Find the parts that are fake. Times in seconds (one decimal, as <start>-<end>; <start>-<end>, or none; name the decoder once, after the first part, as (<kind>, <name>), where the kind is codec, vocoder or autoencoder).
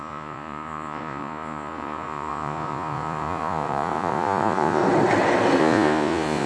0.0-4.8 (vocoder, Vocos); 5.6-6.5